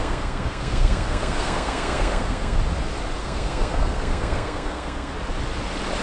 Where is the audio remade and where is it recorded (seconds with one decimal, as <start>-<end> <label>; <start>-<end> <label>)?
0.0-2.6 remade; 2.6-3.2 recorded; 3.2-5.1 remade; 5.1-6.0 recorded